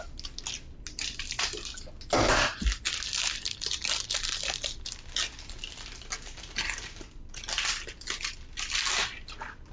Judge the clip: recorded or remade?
recorded